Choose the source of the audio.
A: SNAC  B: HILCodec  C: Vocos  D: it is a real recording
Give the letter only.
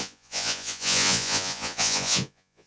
C